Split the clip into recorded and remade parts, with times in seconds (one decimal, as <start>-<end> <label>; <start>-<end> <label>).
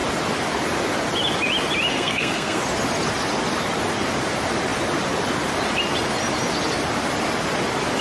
0.0-1.9 recorded; 1.9-2.6 remade; 2.6-8.0 recorded